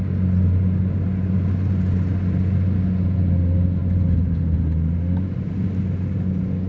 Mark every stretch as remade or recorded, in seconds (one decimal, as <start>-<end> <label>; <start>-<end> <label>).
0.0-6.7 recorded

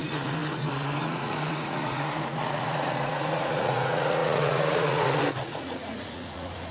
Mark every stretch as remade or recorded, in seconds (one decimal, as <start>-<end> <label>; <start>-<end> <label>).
0.0-6.7 remade

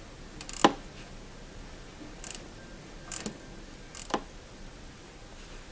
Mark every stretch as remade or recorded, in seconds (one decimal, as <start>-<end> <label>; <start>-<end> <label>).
0.0-5.7 recorded

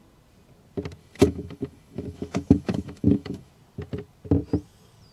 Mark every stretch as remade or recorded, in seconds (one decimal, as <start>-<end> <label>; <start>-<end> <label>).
0.0-1.0 recorded; 1.0-3.5 remade; 3.5-5.1 recorded